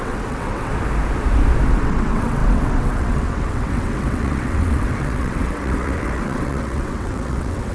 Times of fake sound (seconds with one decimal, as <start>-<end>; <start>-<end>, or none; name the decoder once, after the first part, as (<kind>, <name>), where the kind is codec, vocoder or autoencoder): 0.0-0.7 (vocoder, WaveNeXt); 1.7-7.7